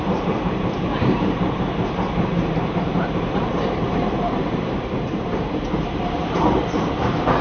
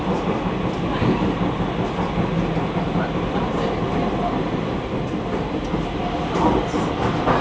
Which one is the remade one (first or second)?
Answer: first